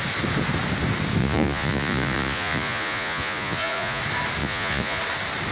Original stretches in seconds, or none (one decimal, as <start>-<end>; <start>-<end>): 0.0-1.2; 4.0-4.4; 5.0-5.5

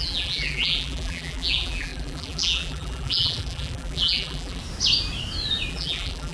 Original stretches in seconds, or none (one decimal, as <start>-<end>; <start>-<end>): 4.6-5.7

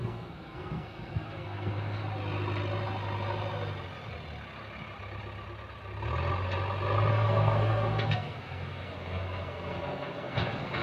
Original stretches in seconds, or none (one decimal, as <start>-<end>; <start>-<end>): 2.0-7.1

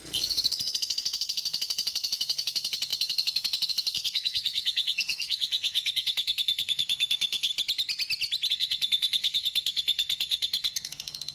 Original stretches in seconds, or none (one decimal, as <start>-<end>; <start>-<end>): 7.5-8.5

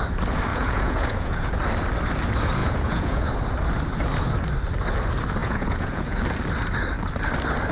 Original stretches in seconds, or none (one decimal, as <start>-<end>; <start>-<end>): 0.0-0.5; 1.5-2.6; 3.3-5.4; 6.2-7.7

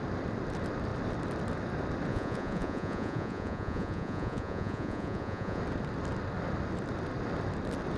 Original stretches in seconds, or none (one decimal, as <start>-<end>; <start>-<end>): 0.0-2.1; 5.6-8.0